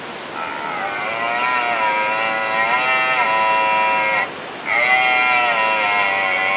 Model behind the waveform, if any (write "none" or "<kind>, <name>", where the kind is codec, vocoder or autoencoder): none